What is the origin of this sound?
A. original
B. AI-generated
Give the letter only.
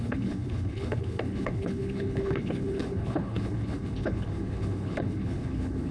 B